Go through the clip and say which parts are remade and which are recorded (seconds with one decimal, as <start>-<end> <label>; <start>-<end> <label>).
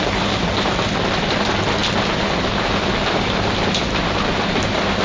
0.0-5.0 recorded